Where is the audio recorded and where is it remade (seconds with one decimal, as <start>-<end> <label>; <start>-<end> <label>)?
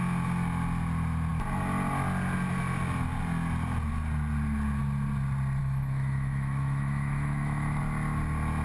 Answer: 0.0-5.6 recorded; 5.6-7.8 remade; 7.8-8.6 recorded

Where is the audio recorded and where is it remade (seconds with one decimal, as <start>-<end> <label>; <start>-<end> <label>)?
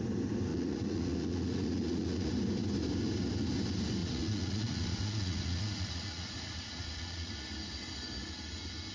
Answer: 0.0-0.5 recorded; 0.5-2.3 remade; 2.3-4.0 recorded; 4.0-7.3 remade; 7.3-8.9 recorded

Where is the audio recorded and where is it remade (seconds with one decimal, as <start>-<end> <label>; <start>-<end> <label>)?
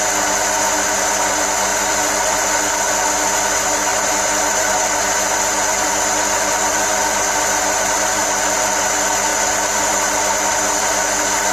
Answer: 0.0-1.7 recorded; 1.7-2.9 remade; 2.9-3.9 recorded; 3.9-8.2 remade; 8.2-9.3 recorded; 9.3-11.1 remade; 11.1-11.5 recorded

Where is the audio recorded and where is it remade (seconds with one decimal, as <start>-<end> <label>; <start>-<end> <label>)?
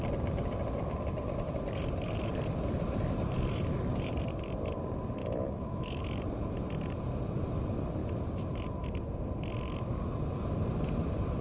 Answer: 0.0-5.2 recorded; 5.2-6.0 remade; 6.0-11.4 recorded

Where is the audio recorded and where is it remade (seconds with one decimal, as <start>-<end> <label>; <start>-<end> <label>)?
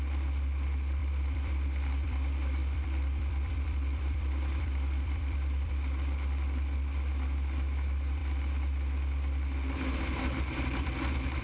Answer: 0.0-1.0 recorded; 1.0-5.7 remade; 5.7-11.4 recorded